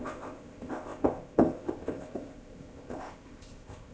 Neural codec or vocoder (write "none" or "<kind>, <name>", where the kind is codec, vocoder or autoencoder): codec, ZipCodec